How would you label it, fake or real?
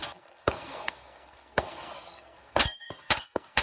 fake